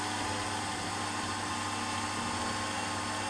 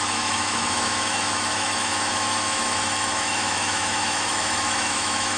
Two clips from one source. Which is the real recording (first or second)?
first